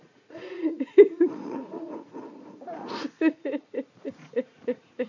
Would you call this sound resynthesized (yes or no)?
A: yes